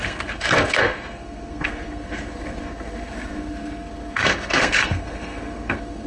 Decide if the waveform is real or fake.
fake